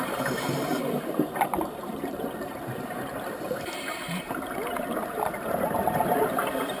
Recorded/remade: remade